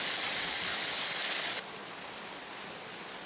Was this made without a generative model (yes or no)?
no